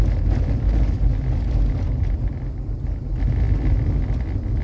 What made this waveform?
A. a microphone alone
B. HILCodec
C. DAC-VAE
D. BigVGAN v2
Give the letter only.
A